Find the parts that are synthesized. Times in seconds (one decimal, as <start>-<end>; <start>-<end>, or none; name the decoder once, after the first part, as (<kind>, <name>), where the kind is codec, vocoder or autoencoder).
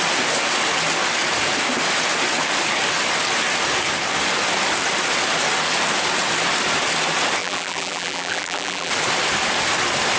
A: 7.4-8.9 (vocoder, BigVGAN v2)